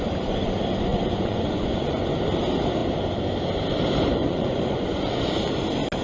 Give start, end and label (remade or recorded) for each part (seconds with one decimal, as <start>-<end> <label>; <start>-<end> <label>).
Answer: 0.0-0.9 recorded; 0.9-2.2 remade; 2.2-4.2 recorded; 4.2-5.3 remade; 5.3-6.0 recorded